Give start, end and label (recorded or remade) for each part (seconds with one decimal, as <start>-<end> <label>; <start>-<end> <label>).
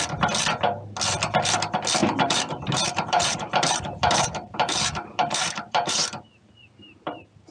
0.0-2.0 recorded; 2.0-6.2 remade; 6.2-7.5 recorded